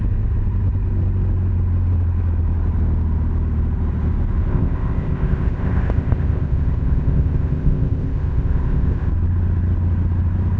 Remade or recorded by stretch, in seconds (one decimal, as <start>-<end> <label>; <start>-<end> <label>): 0.0-4.5 recorded; 4.5-9.1 remade; 9.1-10.6 recorded